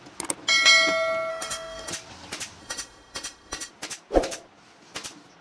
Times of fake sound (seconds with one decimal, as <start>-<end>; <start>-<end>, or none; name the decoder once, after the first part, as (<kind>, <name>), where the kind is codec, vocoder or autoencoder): 1.3-1.9 (autoencoder, DAC-VAE); 2.6-3.7